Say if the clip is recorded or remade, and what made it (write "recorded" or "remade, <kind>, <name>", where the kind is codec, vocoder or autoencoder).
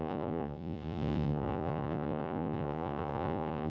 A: remade, vocoder, Vocos